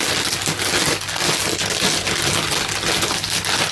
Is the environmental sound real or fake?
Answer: real